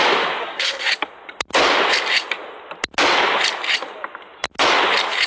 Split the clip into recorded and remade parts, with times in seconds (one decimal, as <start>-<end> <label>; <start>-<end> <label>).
0.0-0.4 recorded; 0.4-0.9 remade; 0.9-5.3 recorded

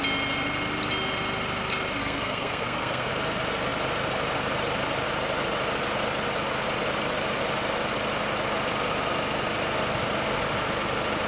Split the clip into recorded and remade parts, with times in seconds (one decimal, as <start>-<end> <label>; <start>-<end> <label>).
0.0-2.0 recorded; 2.0-3.1 remade; 3.1-11.3 recorded